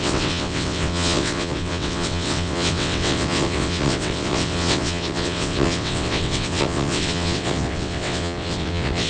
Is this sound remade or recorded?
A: remade